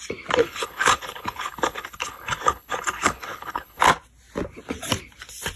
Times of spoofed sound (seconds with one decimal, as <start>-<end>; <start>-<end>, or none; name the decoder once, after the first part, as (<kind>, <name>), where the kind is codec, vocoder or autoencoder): 0.4-3.8 (codec, HILCodec)